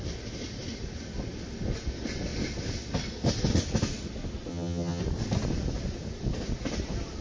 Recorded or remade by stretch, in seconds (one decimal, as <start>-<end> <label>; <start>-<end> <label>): 0.0-4.5 recorded; 4.5-5.0 remade; 5.0-7.2 recorded